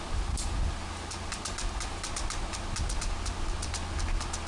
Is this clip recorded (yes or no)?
yes